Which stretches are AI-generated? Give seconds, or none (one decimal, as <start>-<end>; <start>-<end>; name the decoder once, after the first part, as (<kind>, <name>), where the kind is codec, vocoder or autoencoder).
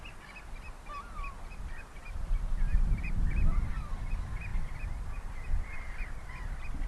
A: 2.0-3.7 (vocoder, BigVGAN v2)